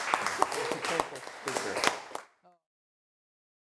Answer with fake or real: real